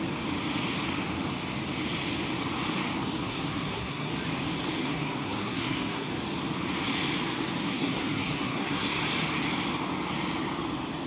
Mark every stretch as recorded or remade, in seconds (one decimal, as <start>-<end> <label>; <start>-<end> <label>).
0.0-3.2 recorded; 3.2-4.1 remade; 4.1-4.8 recorded; 4.8-6.1 remade; 6.1-7.6 recorded; 7.6-9.0 remade; 9.0-11.1 recorded